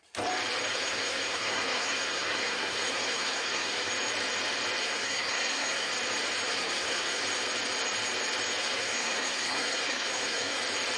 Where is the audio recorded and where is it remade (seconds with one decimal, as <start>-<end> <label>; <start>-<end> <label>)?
0.0-0.7 recorded; 0.7-3.9 remade; 3.9-4.8 recorded; 4.8-5.9 remade; 5.9-6.5 recorded; 6.5-7.2 remade; 7.2-8.6 recorded; 8.6-10.6 remade; 10.6-11.0 recorded

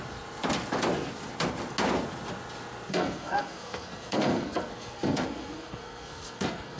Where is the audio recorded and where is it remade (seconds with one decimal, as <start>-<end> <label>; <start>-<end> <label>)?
0.0-2.9 recorded; 2.9-6.8 remade

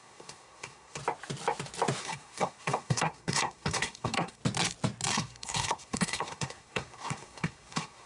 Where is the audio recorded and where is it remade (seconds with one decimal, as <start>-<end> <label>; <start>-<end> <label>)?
0.0-1.0 remade; 1.0-2.0 recorded; 2.0-4.4 remade; 4.4-5.1 recorded; 5.1-8.1 remade

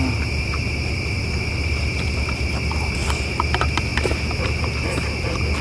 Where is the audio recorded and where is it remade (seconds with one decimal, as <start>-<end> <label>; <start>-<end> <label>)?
0.0-5.6 recorded

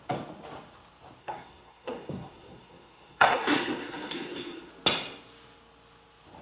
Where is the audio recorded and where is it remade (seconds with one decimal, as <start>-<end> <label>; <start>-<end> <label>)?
0.0-1.2 recorded; 1.2-4.7 remade; 4.7-6.4 recorded

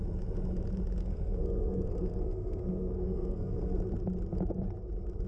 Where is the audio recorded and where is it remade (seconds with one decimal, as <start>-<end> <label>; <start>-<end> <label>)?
0.0-1.0 recorded; 1.0-3.8 remade; 3.8-5.3 recorded

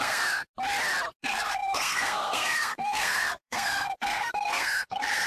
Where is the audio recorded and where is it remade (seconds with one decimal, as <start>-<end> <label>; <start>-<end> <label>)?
0.0-0.5 remade; 0.5-1.2 recorded; 1.2-5.3 remade